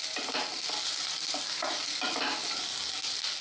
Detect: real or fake real